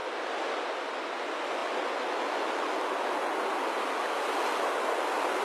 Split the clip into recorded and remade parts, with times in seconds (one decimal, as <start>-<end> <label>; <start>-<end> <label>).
0.0-5.4 recorded